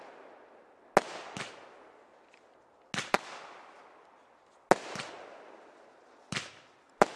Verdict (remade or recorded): recorded